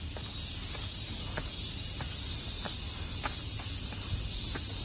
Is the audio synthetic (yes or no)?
no